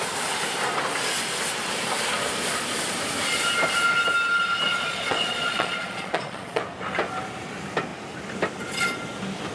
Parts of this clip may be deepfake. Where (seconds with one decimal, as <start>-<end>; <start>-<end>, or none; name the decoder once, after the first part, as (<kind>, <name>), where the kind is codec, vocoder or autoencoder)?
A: 4.6-6.6 (vocoder, Vocos)